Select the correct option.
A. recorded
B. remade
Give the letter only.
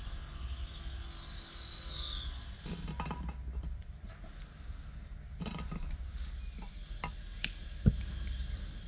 A